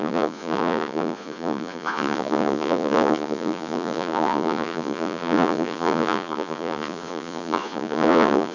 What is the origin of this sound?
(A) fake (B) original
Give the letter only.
A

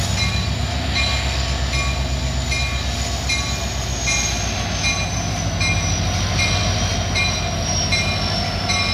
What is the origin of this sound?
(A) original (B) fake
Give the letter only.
A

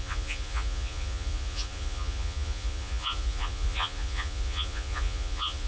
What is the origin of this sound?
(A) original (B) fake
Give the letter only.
B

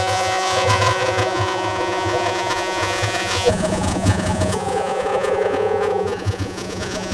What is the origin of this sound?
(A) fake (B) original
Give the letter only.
A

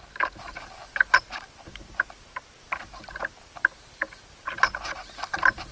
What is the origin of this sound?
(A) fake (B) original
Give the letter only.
B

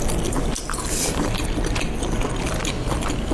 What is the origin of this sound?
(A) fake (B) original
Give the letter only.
B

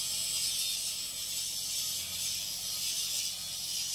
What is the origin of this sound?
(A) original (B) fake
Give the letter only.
A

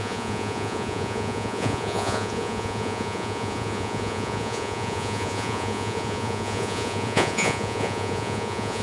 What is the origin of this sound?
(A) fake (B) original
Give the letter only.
A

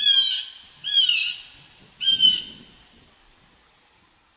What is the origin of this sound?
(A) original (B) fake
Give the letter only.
A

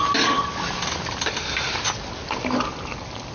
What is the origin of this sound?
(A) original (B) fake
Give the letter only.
A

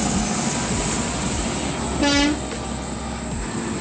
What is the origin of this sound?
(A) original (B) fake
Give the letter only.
A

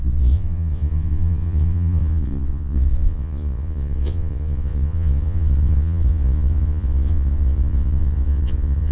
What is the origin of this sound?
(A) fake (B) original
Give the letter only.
A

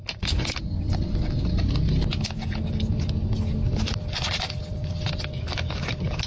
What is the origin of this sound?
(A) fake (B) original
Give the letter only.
B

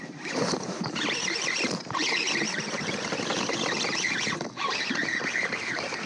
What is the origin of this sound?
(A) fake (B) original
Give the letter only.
B